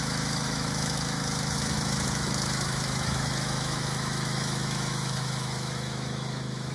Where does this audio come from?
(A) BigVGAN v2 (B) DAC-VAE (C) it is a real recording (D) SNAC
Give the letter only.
B